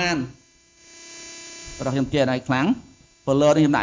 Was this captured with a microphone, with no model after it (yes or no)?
yes